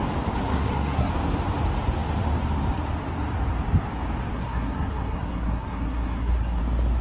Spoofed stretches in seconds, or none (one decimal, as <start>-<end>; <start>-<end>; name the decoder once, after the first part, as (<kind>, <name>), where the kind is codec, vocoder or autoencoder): 0.4-1.1 (codec, SNAC); 4.3-6.6